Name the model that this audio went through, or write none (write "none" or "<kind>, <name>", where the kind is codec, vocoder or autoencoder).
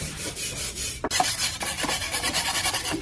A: none